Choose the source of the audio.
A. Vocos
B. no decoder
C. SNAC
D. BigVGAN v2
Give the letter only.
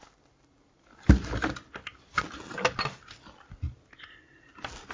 B